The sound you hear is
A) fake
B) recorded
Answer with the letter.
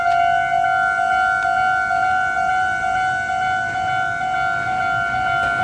B